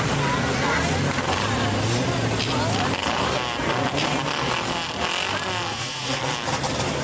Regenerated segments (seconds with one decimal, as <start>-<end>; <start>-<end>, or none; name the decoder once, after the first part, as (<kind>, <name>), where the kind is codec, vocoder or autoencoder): 5.7-6.2 (vocoder, Vocos)